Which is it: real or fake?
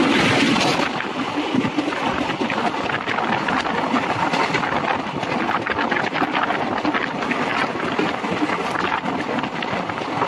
real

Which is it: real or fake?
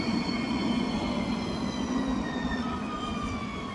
fake